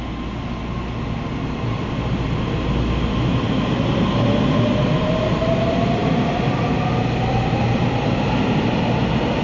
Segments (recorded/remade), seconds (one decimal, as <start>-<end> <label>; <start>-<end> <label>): 0.0-9.4 recorded